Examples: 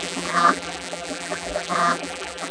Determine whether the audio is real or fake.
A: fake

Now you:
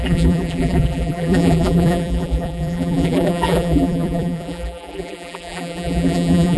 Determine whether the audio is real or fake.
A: fake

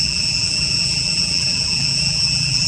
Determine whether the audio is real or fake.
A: fake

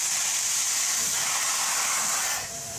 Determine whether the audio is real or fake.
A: fake